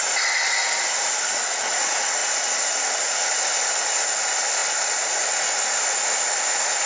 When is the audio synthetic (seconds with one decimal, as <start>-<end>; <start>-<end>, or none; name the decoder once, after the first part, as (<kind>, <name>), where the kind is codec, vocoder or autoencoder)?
none